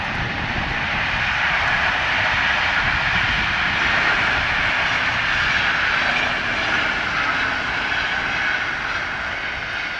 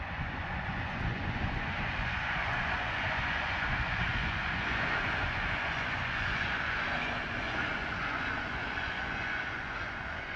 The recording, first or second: first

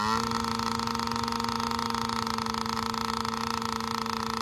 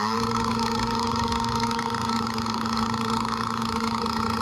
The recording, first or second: first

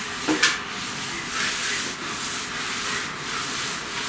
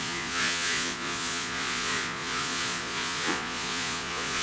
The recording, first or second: first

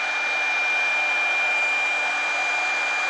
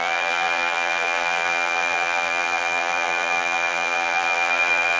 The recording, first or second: first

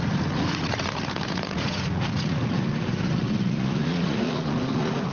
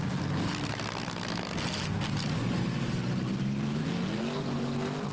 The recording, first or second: second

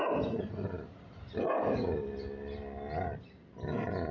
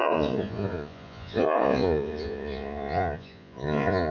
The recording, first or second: first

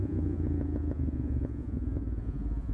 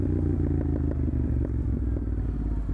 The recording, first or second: second